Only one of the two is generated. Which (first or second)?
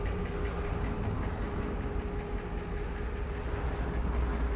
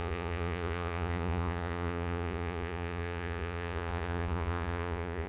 second